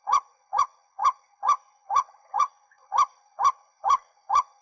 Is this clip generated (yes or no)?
yes